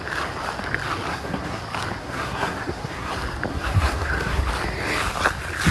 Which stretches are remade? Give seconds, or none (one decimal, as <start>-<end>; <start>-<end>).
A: 1.1-1.6; 2.0-3.1; 3.5-4.4